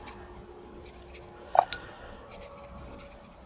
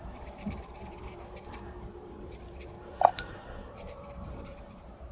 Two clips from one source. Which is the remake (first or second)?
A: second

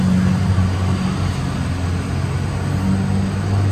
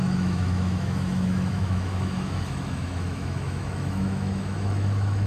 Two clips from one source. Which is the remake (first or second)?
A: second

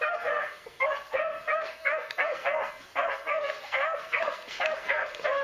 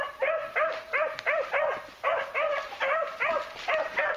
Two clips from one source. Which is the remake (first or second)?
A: first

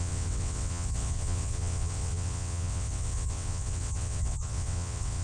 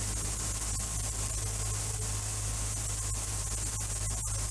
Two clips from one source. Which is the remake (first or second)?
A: first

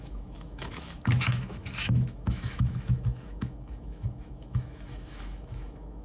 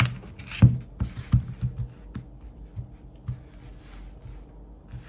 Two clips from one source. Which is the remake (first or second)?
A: first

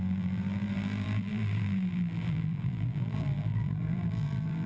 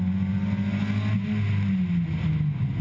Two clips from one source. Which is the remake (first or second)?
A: first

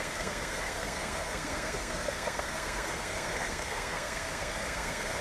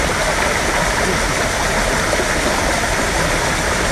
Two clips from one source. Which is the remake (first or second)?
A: first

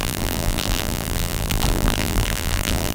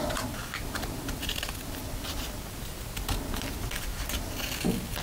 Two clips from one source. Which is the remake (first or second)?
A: first